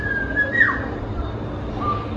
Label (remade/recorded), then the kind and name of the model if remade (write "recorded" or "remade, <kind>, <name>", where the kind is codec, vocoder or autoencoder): recorded